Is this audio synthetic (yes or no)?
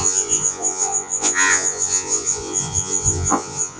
yes